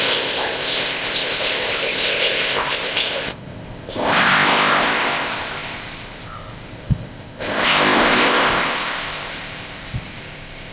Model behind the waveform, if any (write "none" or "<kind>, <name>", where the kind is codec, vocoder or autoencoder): codec, ZipCodec